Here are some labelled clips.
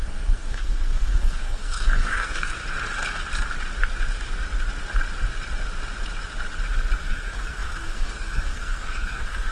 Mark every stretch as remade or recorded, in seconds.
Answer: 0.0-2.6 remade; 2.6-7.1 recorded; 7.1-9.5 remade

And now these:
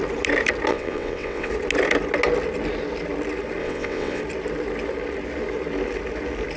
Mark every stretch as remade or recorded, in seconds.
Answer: 0.0-0.7 recorded; 0.7-1.5 remade; 1.5-3.6 recorded; 3.6-4.2 remade; 4.2-6.6 recorded